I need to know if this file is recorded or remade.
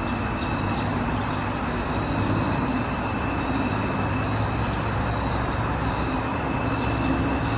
recorded